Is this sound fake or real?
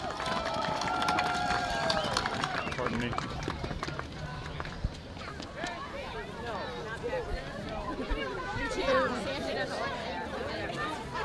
fake